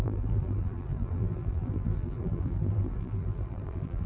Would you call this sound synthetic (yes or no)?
yes